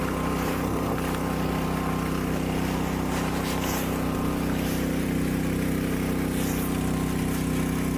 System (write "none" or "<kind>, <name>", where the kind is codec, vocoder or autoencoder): none